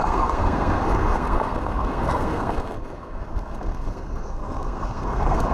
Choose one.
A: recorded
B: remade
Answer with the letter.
B